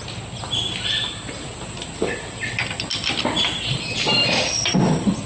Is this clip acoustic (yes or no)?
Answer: yes